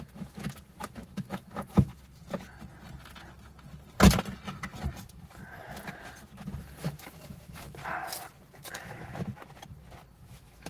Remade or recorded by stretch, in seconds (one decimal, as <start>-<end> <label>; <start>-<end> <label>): 0.0-1.9 remade; 1.9-6.6 recorded; 6.6-7.8 remade; 7.8-8.7 recorded; 8.7-9.3 remade; 9.3-10.2 recorded; 10.2-10.7 remade

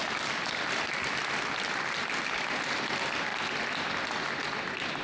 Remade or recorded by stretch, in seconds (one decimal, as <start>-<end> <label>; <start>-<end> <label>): 0.0-5.0 recorded